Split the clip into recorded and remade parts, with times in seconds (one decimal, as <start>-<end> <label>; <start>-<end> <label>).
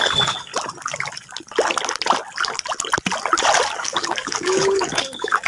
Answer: 0.0-0.5 remade; 0.5-3.8 recorded; 3.8-5.5 remade